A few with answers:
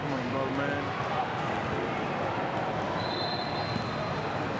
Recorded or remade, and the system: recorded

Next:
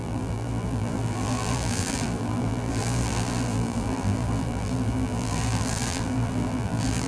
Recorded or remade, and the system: remade, vocoder, BigVGAN v2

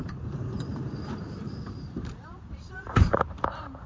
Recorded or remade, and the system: remade, vocoder, BigVGAN v2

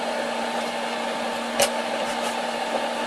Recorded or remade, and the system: remade, vocoder, BigVGAN v2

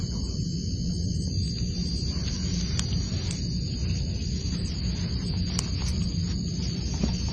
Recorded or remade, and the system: recorded